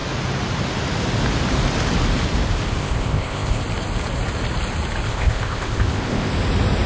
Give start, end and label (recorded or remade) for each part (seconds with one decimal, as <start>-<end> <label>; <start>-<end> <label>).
0.0-2.8 recorded; 2.8-3.6 remade; 3.6-5.1 recorded; 5.1-6.3 remade; 6.3-6.9 recorded